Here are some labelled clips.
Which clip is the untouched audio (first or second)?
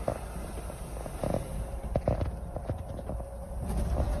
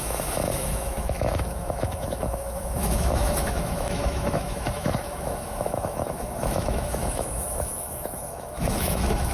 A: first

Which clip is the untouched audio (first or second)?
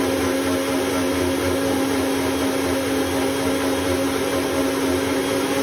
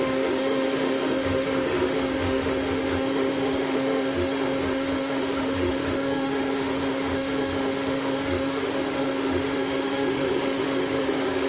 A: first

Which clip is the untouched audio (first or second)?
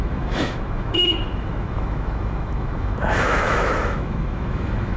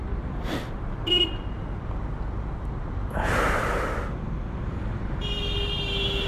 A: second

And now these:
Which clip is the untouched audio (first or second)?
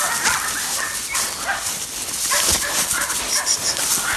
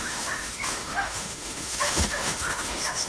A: first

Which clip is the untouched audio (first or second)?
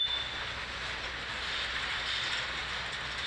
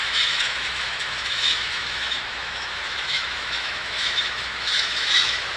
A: first